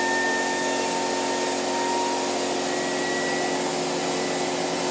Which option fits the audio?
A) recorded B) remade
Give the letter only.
A